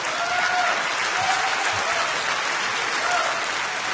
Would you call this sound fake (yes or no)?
no